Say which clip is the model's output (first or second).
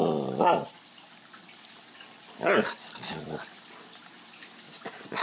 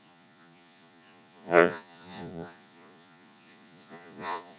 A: second